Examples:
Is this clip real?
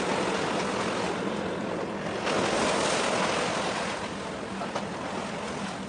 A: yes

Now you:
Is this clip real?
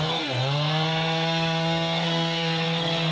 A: no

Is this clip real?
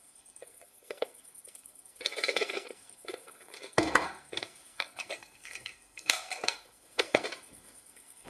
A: no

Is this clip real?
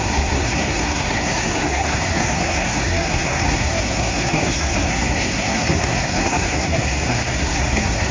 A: no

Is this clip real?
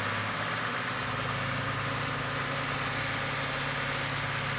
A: yes